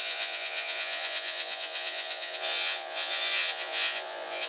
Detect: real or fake fake